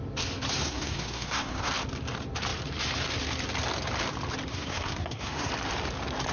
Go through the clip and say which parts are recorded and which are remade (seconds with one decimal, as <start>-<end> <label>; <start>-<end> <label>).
0.0-0.6 recorded; 0.6-1.7 remade; 1.7-4.5 recorded; 4.5-5.5 remade; 5.5-6.3 recorded